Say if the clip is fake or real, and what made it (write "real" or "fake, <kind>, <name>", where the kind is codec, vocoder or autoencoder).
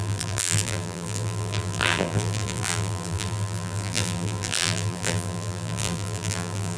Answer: fake, vocoder, BigVGAN v2